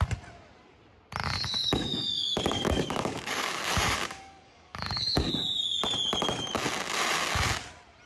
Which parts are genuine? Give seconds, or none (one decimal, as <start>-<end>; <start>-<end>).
0.0-1.2; 5.3-8.1